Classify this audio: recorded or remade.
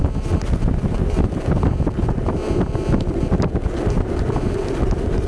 recorded